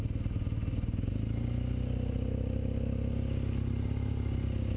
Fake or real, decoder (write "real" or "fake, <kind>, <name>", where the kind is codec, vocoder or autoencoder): real